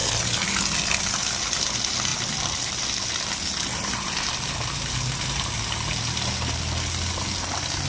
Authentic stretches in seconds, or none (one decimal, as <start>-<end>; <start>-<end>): 0.0-7.9